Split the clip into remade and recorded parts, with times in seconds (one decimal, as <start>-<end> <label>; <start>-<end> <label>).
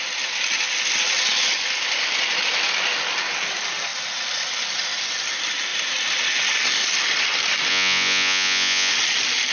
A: 0.0-7.7 recorded; 7.7-8.9 remade; 8.9-9.5 recorded